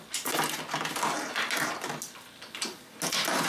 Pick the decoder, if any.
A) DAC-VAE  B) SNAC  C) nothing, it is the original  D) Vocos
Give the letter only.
C